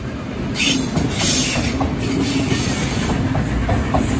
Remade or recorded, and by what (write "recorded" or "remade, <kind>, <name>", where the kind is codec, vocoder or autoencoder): recorded